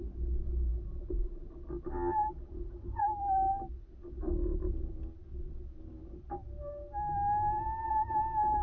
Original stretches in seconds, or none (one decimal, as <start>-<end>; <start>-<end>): 0.0-0.7; 1.5-8.6